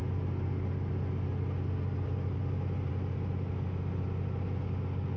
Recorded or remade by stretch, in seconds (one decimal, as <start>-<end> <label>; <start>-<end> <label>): 0.0-5.2 recorded